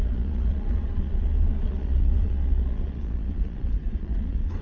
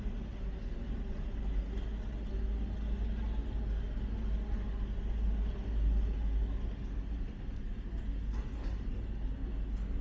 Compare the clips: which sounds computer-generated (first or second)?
first